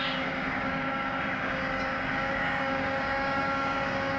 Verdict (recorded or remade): remade